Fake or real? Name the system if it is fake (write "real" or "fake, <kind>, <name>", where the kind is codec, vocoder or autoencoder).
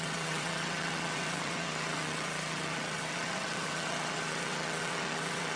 fake, vocoder, WaveNeXt